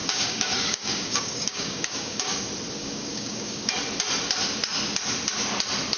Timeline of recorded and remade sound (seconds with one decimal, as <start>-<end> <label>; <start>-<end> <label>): 0.0-2.4 remade; 2.4-2.8 recorded; 2.8-3.7 remade; 3.7-6.0 recorded